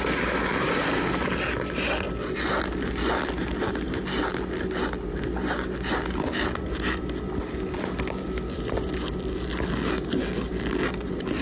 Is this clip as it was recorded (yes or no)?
yes